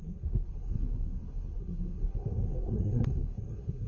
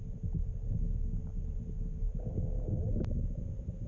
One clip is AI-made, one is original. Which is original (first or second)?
second